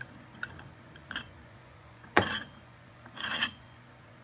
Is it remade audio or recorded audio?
remade